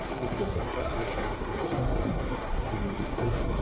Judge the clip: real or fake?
fake